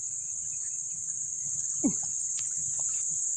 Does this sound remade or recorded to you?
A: recorded